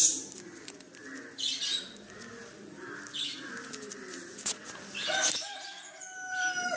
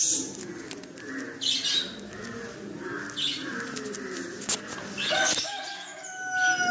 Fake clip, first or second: first